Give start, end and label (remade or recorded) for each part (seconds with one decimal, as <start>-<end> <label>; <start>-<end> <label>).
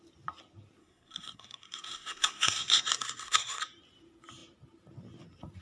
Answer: 0.0-0.8 recorded; 0.8-3.6 remade; 3.6-5.6 recorded